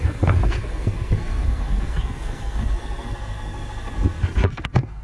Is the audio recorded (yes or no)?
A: no